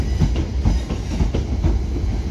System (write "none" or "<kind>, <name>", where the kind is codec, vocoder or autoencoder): none